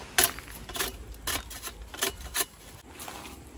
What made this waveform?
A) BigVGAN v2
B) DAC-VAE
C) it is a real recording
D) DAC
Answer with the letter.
C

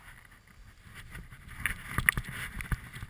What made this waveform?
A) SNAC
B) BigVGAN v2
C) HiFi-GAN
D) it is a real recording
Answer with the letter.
D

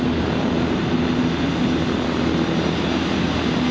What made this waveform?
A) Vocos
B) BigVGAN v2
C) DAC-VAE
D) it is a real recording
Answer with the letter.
D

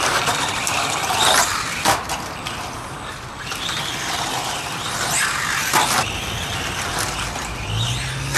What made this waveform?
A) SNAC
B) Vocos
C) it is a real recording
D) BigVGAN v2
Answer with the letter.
D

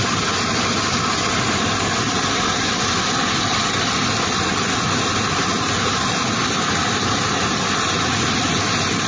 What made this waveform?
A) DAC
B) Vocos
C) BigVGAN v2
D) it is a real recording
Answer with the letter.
D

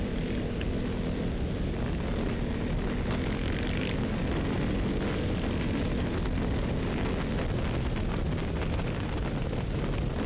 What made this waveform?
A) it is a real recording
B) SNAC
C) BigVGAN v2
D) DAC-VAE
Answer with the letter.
A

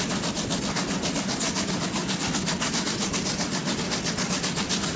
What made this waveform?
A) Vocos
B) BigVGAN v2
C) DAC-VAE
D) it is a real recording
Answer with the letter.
D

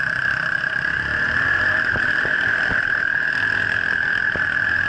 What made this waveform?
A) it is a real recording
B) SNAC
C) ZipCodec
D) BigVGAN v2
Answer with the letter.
D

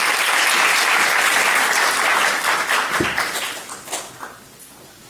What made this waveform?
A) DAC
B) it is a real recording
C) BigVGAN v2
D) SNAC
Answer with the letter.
B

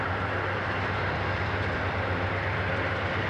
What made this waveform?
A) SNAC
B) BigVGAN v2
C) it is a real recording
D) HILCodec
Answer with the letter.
B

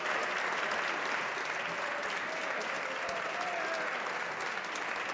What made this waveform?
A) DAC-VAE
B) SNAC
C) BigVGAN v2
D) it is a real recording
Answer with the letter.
D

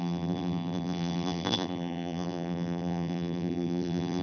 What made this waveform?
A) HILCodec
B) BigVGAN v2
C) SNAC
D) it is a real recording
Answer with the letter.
B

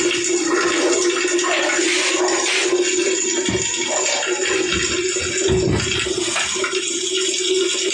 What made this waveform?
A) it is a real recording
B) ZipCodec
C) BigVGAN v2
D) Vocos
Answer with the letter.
A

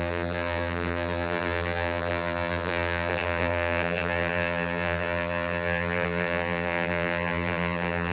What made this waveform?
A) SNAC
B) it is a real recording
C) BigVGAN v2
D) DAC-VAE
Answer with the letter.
C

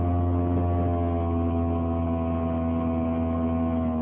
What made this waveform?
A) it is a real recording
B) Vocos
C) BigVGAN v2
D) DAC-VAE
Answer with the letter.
A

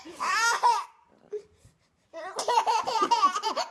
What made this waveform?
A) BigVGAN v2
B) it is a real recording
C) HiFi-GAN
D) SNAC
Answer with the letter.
A